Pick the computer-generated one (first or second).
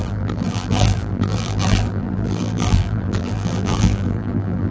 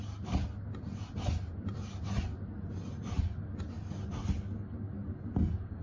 first